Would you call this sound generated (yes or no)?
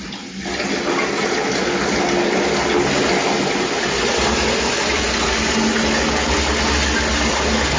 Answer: no